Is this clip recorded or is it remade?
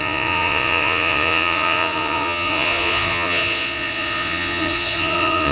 remade